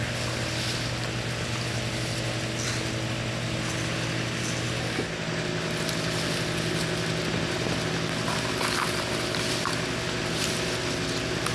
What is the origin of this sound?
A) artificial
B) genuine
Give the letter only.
B